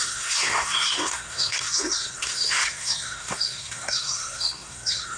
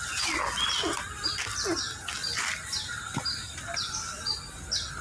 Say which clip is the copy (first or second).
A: first